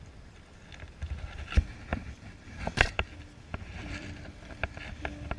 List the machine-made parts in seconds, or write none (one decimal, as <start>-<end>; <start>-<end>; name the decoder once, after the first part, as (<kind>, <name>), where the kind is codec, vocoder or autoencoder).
1.9-3.1 (vocoder, BigVGAN v2); 3.8-4.8